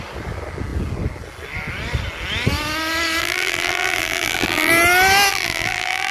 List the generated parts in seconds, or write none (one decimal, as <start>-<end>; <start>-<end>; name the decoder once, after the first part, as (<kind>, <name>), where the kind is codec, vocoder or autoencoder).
3.2-4.7 (vocoder, BigVGAN v2); 5.3-6.1